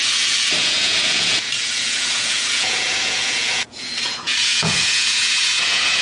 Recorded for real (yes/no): no